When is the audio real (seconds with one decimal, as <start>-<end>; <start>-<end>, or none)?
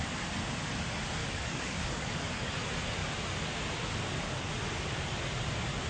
0.0-1.2; 2.5-5.9